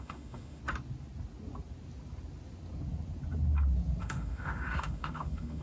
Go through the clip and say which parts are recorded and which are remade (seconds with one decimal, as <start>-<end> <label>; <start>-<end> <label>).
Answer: 0.0-0.6 remade; 0.6-4.0 recorded; 4.0-5.6 remade